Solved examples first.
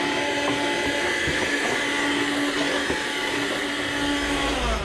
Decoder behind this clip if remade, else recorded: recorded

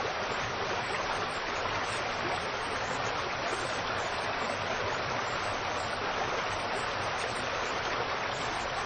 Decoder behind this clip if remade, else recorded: remade, vocoder, BigVGAN v2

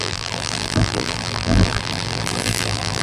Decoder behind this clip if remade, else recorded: remade, vocoder, BigVGAN v2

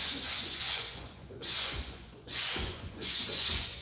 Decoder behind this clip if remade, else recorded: remade, vocoder, Vocos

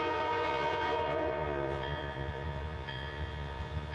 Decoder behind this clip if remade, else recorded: remade, vocoder, Vocos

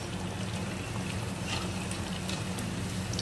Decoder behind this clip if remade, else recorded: recorded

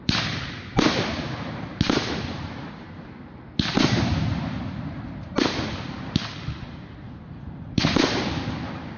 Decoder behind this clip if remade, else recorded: recorded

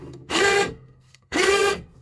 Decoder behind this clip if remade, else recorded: remade, codec, SNAC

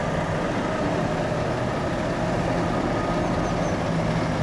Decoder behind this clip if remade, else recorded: recorded